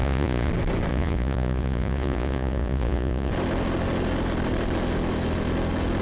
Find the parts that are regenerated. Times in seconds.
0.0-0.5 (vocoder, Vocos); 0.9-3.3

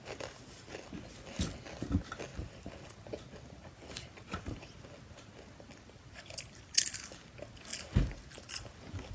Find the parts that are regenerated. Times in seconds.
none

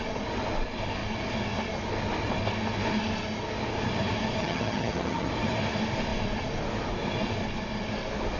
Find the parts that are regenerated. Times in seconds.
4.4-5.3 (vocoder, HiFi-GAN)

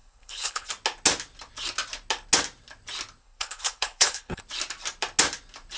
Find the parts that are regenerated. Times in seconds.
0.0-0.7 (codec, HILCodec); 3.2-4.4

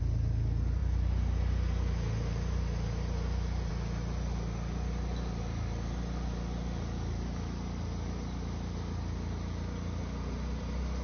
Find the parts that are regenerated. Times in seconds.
none